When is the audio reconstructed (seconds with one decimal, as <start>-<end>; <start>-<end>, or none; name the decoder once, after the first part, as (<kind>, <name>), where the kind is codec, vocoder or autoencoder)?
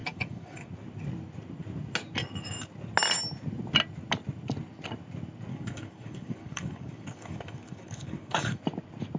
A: 0.0-0.7 (codec, DAC); 5.5-8.6